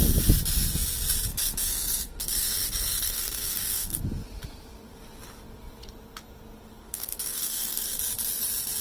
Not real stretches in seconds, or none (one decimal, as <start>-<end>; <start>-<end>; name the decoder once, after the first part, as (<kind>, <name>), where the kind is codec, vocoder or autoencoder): 1.3-4.0 (codec, SNAC); 6.8-8.0